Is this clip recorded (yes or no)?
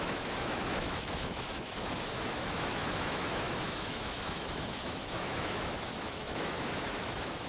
no